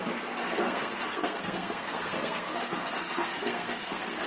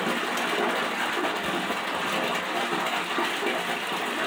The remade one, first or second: first